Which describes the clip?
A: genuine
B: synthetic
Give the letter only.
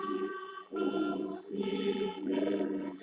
B